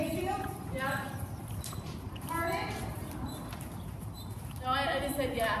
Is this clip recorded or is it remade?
remade